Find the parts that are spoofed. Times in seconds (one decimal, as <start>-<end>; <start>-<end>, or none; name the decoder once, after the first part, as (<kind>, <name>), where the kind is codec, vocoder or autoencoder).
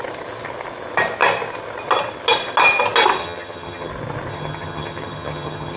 3.2-3.9 (vocoder, HiFi-GAN); 4.3-5.8